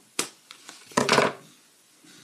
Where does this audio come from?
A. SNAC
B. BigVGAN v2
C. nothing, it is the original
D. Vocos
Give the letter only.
D